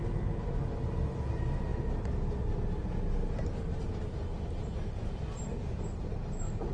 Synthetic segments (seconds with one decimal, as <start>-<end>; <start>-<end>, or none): none